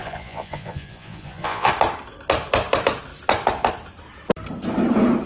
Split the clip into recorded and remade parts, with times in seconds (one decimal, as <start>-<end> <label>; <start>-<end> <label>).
0.0-1.7 remade; 1.7-5.3 recorded